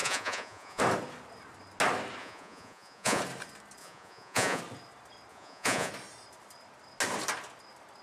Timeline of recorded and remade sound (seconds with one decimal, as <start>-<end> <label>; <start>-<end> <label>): 0.0-0.8 remade; 0.8-2.2 recorded; 2.2-3.2 remade; 3.2-3.8 recorded; 3.8-4.6 remade; 4.6-5.3 recorded; 5.3-5.9 remade; 5.9-8.0 recorded